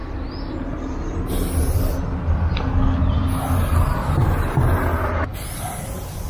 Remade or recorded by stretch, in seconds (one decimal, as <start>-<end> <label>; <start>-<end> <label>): 0.0-6.3 recorded

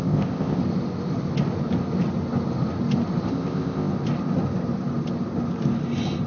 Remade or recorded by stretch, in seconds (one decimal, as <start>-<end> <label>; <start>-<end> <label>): 0.0-0.6 remade; 0.6-3.3 recorded; 3.3-3.9 remade; 3.9-6.3 recorded

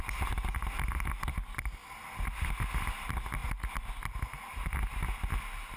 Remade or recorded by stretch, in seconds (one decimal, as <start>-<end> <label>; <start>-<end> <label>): 0.0-5.8 recorded

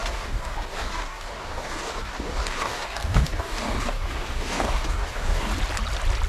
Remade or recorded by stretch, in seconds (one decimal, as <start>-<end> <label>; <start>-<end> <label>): 0.0-5.5 remade; 5.5-6.3 recorded

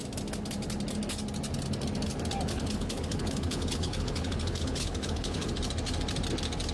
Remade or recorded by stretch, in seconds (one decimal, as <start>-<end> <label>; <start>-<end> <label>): 0.0-2.5 recorded; 2.5-5.6 remade; 5.6-6.7 recorded

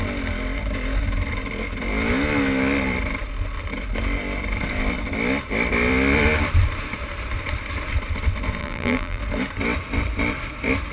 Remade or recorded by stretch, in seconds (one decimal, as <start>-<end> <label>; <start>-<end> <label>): 0.0-8.6 recorded; 8.6-9.2 remade; 9.2-10.9 recorded

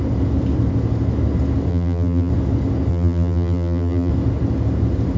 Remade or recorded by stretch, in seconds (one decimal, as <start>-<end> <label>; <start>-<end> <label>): 0.0-1.7 recorded; 1.7-2.3 remade; 2.3-2.9 recorded; 2.9-4.1 remade; 4.1-5.2 recorded

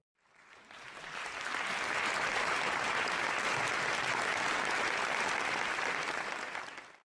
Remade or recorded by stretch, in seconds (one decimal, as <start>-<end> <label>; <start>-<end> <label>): 0.0-7.1 recorded